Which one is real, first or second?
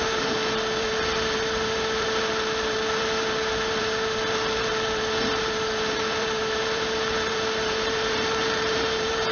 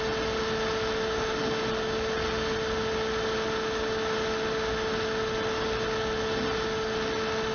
second